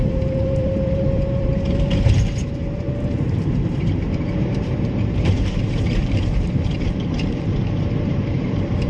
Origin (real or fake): fake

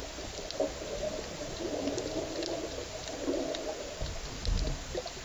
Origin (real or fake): real